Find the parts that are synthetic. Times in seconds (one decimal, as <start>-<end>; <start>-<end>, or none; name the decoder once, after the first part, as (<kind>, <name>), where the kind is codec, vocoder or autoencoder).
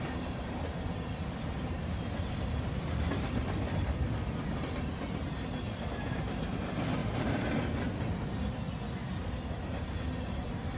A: 7.0-7.6 (vocoder, BigVGAN v2)